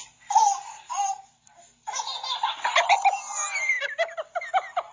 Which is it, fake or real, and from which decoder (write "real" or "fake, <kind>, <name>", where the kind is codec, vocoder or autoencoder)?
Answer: real